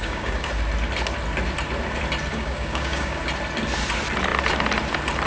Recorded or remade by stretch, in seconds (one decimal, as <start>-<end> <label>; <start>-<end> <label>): 0.0-0.5 remade; 0.5-2.3 recorded; 2.3-3.2 remade; 3.2-5.3 recorded